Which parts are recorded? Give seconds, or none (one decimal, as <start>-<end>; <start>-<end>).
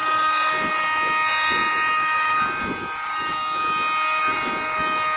0.0-5.2